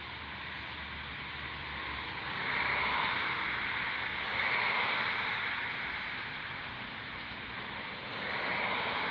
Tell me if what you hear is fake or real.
real